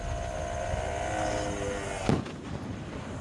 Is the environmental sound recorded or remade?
recorded